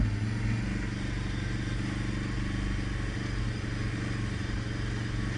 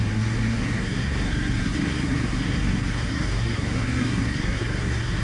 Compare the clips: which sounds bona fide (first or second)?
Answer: first